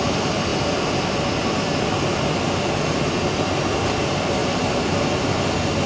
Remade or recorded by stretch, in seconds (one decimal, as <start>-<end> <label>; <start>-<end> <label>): 0.0-5.9 recorded